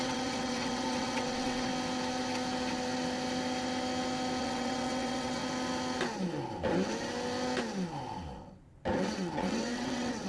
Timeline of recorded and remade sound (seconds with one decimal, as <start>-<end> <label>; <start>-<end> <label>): 0.0-1.7 remade; 1.7-4.4 recorded; 4.4-5.4 remade; 5.4-9.0 recorded; 9.0-10.3 remade